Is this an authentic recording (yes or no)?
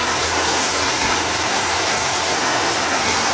no